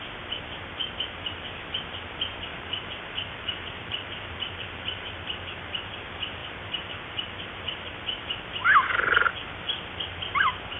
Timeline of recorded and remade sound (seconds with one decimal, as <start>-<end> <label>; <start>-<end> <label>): 0.0-2.5 recorded; 2.5-5.1 remade; 5.1-6.4 recorded; 6.4-7.9 remade; 7.9-10.8 recorded